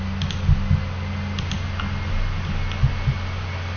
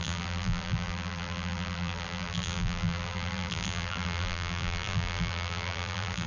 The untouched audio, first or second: first